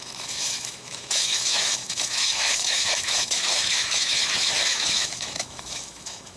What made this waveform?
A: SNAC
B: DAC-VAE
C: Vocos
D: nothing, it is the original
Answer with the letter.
B